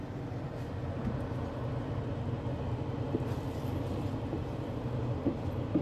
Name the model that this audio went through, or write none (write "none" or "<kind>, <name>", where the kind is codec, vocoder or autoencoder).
none